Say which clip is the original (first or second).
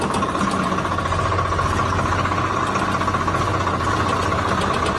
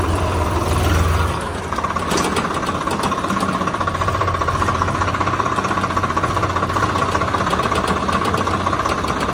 first